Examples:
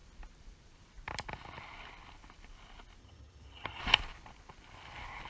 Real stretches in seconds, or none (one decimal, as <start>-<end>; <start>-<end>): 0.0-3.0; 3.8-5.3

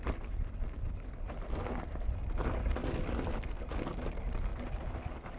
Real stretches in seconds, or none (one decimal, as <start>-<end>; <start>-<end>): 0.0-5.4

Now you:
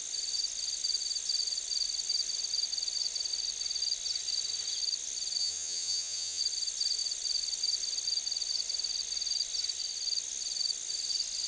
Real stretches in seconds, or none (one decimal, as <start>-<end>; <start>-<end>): 0.0-5.4; 6.4-11.5